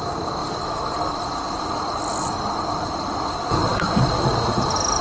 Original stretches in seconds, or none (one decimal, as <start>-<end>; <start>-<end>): 0.0-5.0